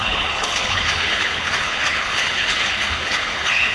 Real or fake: fake